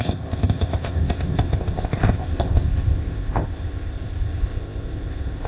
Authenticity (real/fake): fake